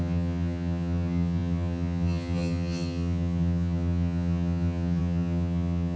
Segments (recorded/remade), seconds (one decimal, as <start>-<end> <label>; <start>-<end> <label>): 0.0-6.0 remade